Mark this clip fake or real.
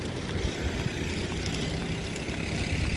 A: real